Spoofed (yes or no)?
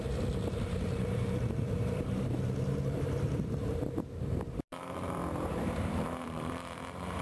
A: yes